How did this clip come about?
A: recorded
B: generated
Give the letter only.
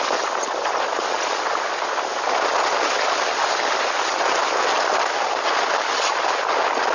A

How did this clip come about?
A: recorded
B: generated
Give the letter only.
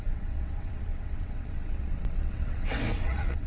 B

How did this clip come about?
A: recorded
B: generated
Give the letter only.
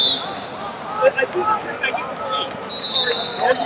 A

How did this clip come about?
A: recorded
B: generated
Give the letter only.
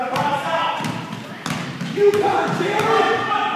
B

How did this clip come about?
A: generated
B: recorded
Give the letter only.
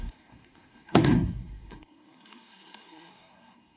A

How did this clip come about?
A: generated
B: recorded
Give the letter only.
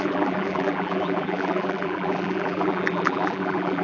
A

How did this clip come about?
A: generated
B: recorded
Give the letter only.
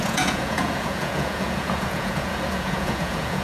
A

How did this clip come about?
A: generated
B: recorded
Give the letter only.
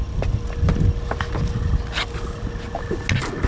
B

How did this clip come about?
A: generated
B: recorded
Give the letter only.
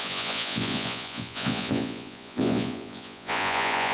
A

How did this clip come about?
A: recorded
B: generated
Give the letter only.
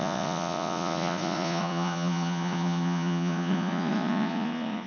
B